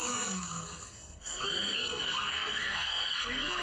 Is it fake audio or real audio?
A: fake